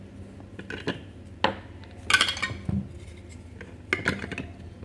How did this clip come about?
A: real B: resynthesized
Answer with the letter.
A